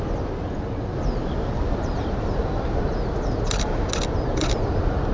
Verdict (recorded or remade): recorded